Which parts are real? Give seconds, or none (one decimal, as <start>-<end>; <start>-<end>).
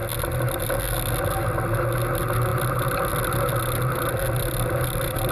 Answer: 0.0-5.3